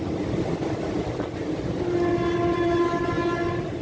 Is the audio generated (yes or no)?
no